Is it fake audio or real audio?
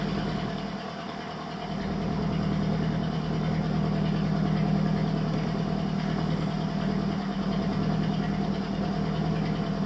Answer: real